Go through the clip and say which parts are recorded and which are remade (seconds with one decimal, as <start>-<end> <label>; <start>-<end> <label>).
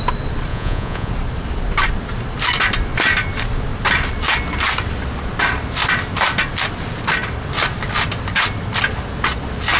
0.0-0.5 recorded; 0.5-1.1 remade; 1.1-9.8 recorded